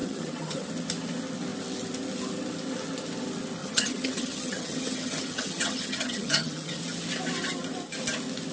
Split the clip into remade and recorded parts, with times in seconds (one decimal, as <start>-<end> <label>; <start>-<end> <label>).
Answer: 0.0-0.7 remade; 0.7-3.6 recorded; 3.6-6.8 remade; 6.8-8.5 recorded